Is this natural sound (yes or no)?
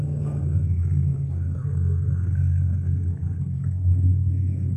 no